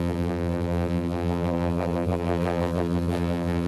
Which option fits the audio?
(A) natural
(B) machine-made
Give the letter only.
B